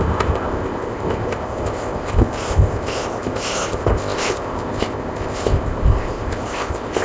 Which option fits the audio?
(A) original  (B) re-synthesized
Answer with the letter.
B